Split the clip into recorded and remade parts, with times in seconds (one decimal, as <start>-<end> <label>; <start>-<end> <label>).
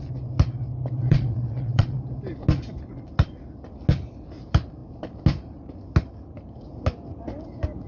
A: 0.0-1.0 recorded; 1.0-2.0 remade; 2.0-7.9 recorded